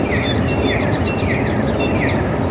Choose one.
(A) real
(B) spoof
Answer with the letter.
A